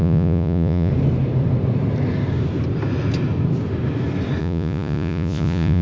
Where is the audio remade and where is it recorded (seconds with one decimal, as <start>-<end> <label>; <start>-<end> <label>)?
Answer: 0.0-0.9 remade; 0.9-4.4 recorded; 4.4-5.8 remade